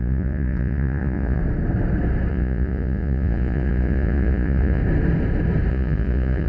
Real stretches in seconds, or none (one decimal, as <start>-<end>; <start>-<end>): 1.4-2.3; 4.8-5.7